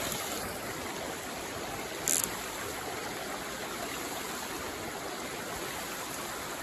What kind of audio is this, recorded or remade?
recorded